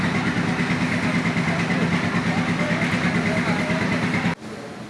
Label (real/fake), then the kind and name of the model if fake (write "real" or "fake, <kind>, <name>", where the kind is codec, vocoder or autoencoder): real